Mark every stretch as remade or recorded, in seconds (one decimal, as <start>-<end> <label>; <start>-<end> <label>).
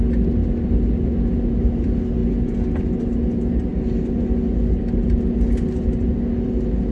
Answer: 0.0-6.9 recorded